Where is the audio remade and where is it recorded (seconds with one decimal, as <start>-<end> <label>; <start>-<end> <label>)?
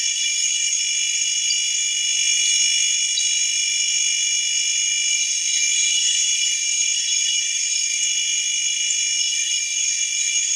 0.0-0.8 remade; 0.8-5.1 recorded; 5.1-8.0 remade; 8.0-9.2 recorded; 9.2-10.6 remade